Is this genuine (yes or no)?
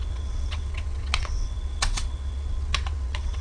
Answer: no